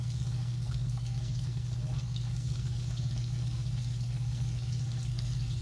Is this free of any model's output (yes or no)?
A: no